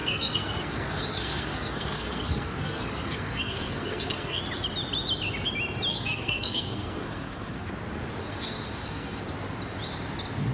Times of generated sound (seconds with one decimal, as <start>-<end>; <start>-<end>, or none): 0.0-4.4; 5.9-7.7; 8.2-9.2